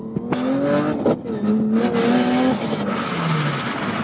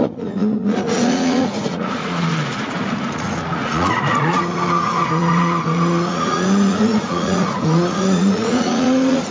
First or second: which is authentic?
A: first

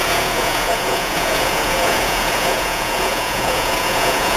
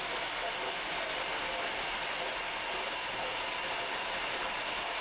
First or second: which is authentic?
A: second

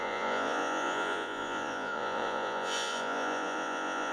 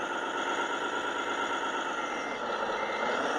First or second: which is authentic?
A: second